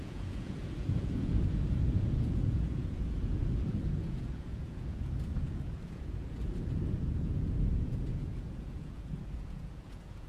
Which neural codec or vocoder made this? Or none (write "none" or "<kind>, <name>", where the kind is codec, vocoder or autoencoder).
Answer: vocoder, Vocos